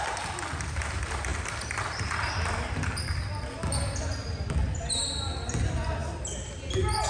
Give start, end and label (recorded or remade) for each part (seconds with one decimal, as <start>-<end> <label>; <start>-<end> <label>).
0.0-7.1 recorded